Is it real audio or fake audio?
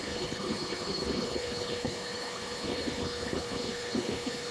fake